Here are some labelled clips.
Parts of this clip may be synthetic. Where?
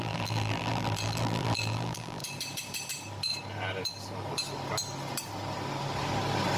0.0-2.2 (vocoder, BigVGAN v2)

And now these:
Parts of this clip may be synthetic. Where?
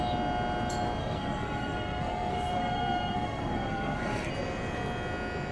1.0-4.3 (codec, SNAC)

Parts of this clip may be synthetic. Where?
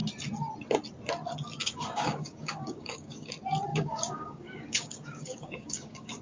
1.6-3.3 (codec, DAC); 3.7-6.2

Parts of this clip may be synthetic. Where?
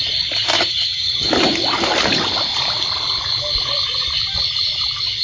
0.7-1.3 (vocoder, HiFi-GAN)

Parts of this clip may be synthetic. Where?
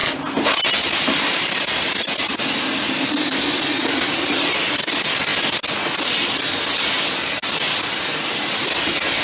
none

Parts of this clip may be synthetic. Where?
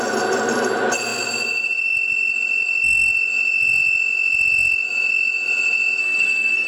6.0-6.7 (codec, SNAC)